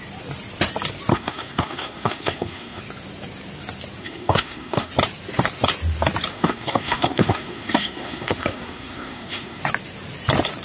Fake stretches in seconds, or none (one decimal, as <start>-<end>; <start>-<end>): 1.1-2.8; 4.0-4.9; 6.3-9.6